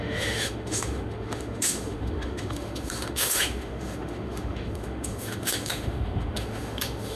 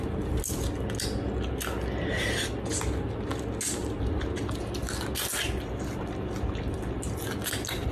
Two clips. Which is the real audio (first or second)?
second